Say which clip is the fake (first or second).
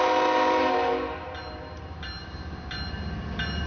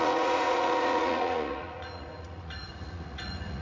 second